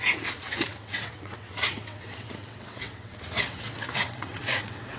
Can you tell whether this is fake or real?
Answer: fake